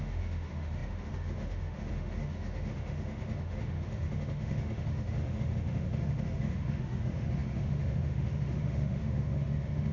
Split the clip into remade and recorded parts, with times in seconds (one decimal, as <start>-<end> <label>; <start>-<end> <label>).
0.0-9.9 remade